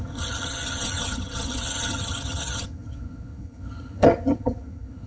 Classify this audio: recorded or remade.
remade